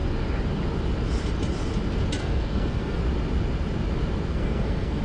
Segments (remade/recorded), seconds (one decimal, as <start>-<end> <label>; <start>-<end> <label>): 0.0-2.2 recorded; 2.2-3.0 remade; 3.0-4.3 recorded; 4.3-5.0 remade